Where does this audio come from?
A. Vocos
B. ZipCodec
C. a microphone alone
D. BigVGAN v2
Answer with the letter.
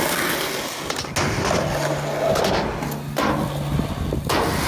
C